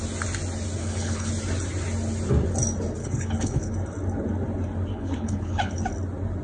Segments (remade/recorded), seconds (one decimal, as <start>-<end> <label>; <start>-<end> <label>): 0.0-0.8 recorded; 0.8-1.3 remade; 1.3-3.0 recorded; 3.0-3.7 remade; 3.7-4.9 recorded; 4.9-5.8 remade; 5.8-6.4 recorded